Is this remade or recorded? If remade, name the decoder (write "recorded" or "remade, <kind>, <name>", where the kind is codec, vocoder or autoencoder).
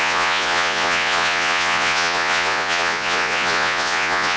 remade, vocoder, Vocos